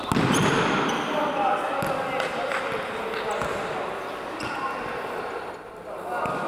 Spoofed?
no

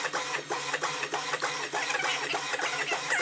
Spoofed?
no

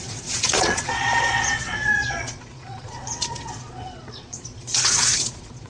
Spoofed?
yes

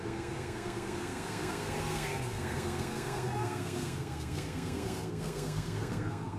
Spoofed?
yes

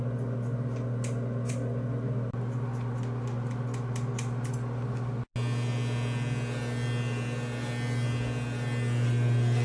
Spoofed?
no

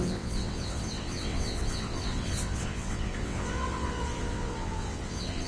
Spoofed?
yes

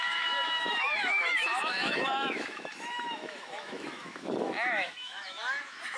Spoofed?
yes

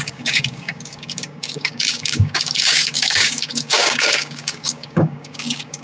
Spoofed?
yes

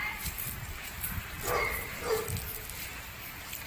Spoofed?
no